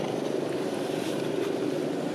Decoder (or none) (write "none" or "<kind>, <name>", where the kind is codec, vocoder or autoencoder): none